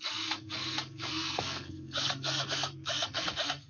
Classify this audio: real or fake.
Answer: fake